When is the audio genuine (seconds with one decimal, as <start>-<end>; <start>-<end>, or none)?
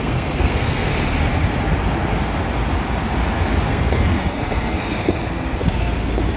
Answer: 0.9-3.7